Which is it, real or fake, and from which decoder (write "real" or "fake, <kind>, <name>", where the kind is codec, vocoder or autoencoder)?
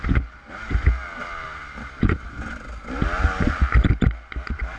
real